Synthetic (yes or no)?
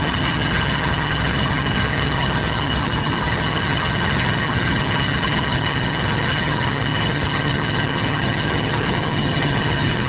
yes